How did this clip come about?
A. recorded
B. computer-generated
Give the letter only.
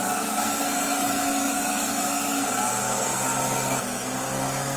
B